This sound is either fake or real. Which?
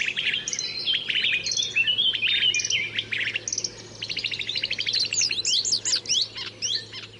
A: real